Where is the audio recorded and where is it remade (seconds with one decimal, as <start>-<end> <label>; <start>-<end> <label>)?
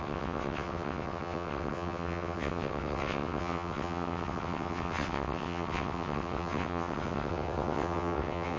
0.0-8.6 remade